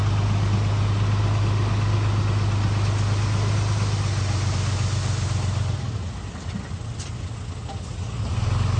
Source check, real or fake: real